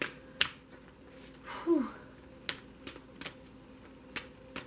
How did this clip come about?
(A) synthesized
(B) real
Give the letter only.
B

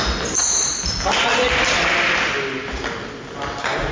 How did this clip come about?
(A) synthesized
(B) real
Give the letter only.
B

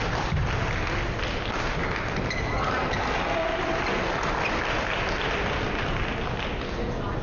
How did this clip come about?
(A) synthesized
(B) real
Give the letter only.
B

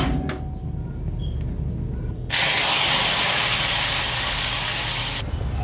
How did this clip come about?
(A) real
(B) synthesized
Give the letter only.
A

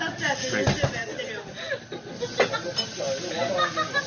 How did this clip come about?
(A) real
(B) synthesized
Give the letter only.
A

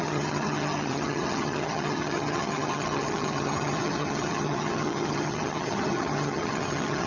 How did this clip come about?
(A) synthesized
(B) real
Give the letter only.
A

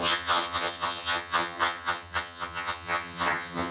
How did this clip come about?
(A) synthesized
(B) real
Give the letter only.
A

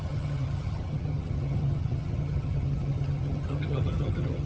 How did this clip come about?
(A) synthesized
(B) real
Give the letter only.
A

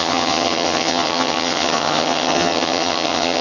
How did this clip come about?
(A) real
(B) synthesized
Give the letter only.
B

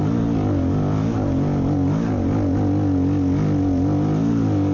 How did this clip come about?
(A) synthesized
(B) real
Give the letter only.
B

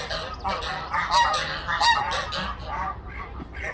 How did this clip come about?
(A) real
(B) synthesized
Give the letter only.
A